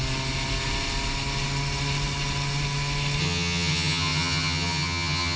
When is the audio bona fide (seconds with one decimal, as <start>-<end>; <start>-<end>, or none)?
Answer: 0.0-3.2